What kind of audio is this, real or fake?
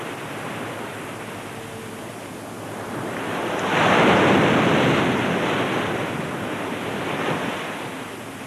real